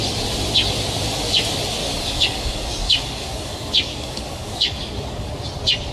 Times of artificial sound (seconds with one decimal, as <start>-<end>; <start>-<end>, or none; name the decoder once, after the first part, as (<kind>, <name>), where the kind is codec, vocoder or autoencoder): 1.8-5.3 (codec, DAC)